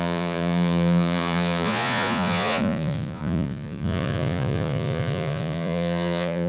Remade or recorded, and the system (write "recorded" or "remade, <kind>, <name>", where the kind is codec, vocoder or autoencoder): remade, vocoder, Vocos